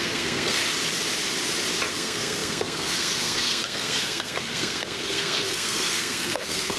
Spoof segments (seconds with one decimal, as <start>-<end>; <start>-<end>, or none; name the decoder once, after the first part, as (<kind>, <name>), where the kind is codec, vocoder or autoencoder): 0.0-0.6 (codec, SNAC); 1.9-6.8